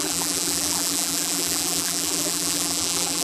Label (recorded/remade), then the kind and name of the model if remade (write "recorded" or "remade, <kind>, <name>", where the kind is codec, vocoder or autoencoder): remade, vocoder, BigVGAN v2